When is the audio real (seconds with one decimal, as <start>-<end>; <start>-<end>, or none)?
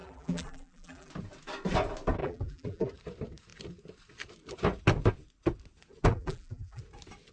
1.1-2.2; 2.9-6.1; 6.8-7.3